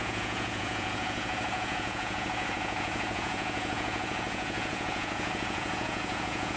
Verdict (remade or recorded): remade